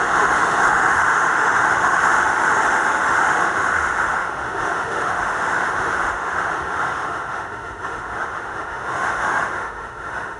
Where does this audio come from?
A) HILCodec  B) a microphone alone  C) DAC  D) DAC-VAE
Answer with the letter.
D